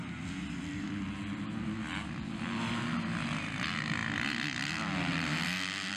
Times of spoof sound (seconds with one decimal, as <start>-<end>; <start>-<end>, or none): none